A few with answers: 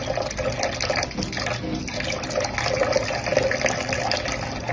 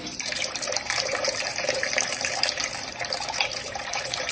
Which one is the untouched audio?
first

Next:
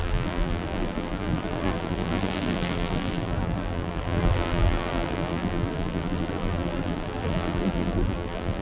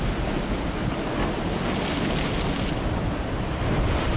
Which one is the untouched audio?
second